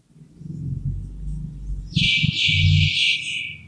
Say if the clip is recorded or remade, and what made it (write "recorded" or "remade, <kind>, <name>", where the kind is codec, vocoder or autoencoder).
recorded